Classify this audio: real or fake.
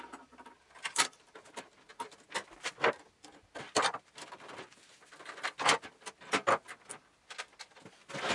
real